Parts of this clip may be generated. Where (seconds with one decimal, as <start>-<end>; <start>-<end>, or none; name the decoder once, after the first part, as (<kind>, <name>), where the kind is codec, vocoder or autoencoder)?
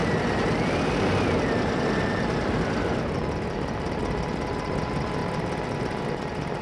none